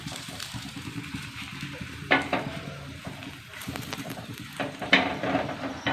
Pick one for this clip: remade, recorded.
remade